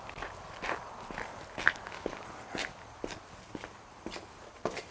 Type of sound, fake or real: real